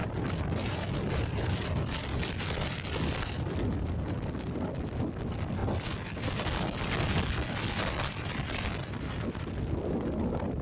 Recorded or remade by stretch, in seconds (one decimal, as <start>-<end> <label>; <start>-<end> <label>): 0.0-10.6 recorded